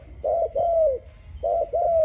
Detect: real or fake real